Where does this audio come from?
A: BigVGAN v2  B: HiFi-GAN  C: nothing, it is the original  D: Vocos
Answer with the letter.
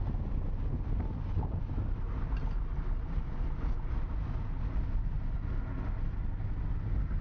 C